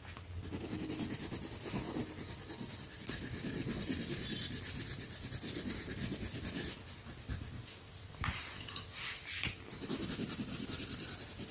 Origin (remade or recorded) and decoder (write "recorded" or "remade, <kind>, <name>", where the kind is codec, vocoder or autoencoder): recorded